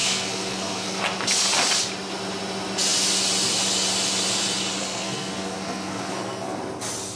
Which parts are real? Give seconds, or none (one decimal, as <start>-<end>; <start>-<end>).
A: 1.0-4.8; 6.6-7.2